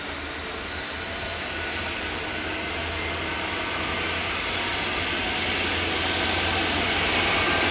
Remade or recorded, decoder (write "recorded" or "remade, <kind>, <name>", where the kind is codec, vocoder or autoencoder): recorded